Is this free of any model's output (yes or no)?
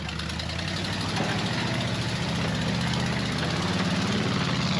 yes